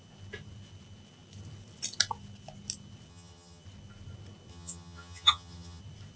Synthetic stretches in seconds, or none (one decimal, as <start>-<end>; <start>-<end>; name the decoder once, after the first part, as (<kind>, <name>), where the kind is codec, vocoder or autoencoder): 3.1-3.6 (vocoder, HiFi-GAN); 4.5-5.8